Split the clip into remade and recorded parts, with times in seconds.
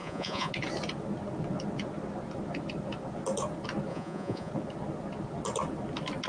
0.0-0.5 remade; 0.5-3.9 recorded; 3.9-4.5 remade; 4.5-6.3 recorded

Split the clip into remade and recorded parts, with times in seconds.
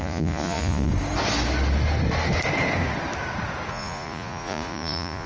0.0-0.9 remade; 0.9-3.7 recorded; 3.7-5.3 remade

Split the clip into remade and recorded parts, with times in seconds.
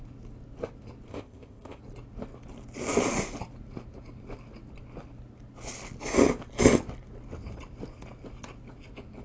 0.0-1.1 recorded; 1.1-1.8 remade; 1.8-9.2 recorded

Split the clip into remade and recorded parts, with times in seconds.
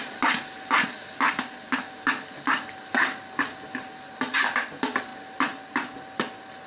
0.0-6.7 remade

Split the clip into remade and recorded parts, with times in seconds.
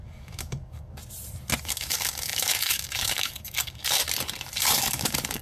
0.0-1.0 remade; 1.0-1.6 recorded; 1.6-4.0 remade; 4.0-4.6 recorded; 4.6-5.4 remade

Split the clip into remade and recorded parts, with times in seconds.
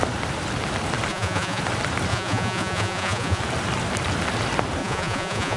0.0-1.1 recorded; 1.1-1.6 remade; 1.6-2.1 recorded; 2.1-3.4 remade; 3.4-4.8 recorded; 4.8-5.6 remade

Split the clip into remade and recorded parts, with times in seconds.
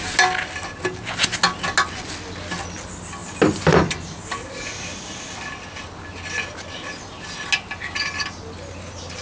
0.0-9.2 recorded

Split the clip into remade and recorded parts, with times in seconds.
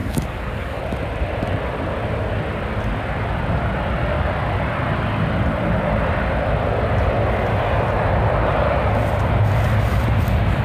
0.0-0.8 remade; 0.8-10.6 recorded